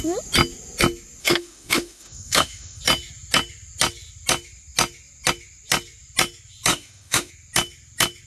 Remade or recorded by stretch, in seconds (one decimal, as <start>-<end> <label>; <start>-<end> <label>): 0.0-1.2 recorded; 1.2-2.8 remade; 2.8-6.7 recorded; 6.7-7.3 remade; 7.3-8.3 recorded